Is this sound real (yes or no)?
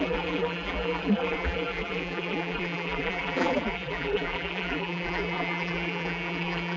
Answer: no